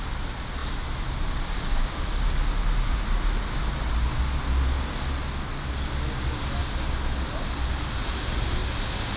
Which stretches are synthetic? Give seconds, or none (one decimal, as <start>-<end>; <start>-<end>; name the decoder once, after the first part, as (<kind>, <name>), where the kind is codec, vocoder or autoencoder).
none

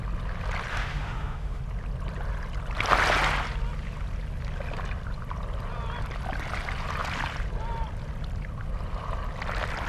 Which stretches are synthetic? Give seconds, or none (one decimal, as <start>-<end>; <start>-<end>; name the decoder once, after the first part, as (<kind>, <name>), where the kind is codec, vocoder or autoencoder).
0.7-1.6 (autoencoder, DAC-VAE)

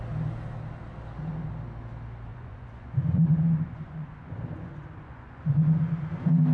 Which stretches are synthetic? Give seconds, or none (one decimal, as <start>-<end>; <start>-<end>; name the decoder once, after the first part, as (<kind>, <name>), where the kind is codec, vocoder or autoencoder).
2.3-5.8 (vocoder, Vocos)

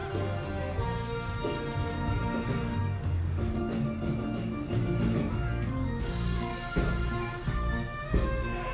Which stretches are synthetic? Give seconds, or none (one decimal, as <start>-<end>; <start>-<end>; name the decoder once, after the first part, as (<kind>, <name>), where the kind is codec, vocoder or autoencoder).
0.6-6.5 (codec, DAC); 7.5-8.7

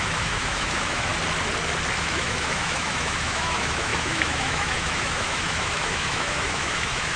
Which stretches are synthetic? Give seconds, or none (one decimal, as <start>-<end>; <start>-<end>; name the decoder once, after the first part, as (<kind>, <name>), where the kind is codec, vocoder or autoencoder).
0.0-1.1 (autoencoder, DAC-VAE); 2.0-7.2

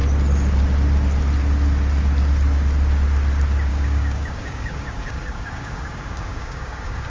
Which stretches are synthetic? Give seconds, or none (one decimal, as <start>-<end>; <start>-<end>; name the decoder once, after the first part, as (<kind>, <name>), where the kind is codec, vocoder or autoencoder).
3.7-7.1 (codec, DAC)